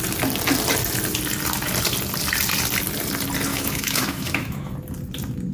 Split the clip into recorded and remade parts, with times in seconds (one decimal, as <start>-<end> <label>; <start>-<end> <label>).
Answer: 0.0-3.5 recorded; 3.5-4.7 remade; 4.7-5.5 recorded